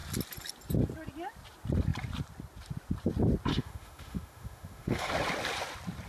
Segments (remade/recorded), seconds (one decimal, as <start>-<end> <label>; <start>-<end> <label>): 0.0-3.5 recorded; 3.5-5.1 remade; 5.1-6.1 recorded